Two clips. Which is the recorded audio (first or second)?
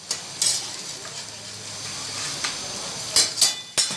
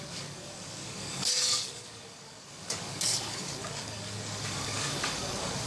first